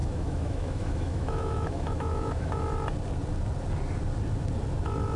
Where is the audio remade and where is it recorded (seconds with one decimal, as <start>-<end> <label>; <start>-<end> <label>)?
0.0-2.6 remade; 2.6-5.2 recorded